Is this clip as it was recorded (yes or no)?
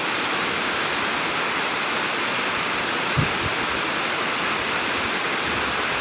yes